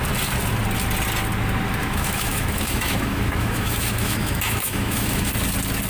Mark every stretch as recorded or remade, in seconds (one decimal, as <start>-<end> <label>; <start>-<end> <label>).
0.0-1.8 recorded; 1.8-5.3 remade; 5.3-5.9 recorded